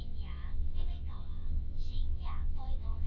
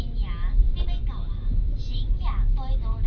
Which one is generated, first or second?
first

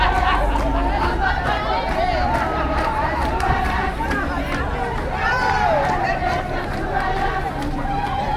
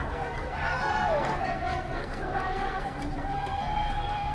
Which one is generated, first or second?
second